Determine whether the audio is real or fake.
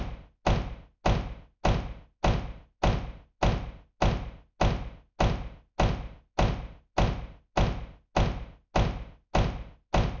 real